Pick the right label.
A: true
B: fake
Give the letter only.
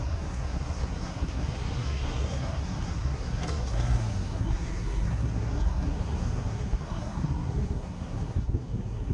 B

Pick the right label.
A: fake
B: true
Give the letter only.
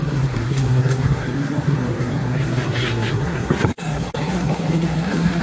A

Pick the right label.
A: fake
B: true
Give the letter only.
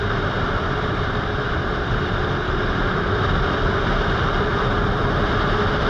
B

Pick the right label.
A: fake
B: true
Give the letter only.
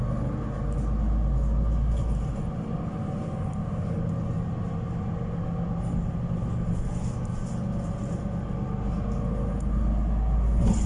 B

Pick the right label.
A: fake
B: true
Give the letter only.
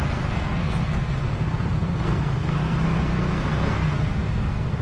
A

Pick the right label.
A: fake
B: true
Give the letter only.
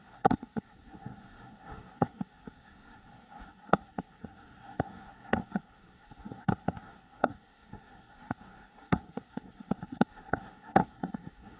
A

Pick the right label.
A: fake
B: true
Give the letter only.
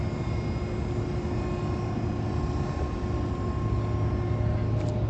B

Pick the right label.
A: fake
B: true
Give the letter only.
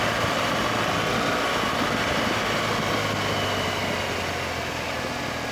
B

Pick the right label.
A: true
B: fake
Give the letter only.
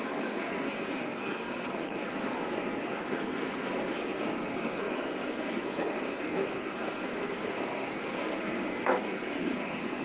B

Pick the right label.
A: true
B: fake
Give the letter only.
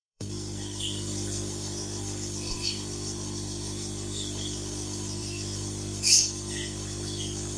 B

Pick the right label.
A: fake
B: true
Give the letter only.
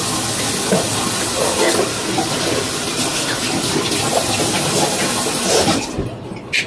B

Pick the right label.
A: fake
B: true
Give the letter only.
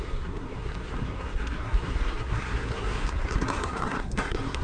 A